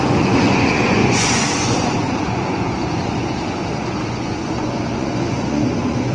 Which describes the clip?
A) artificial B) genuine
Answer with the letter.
A